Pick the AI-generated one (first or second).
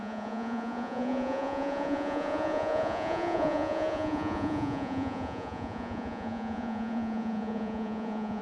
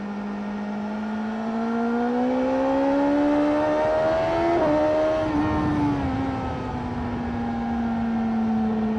first